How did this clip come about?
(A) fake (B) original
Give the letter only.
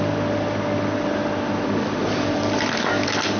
B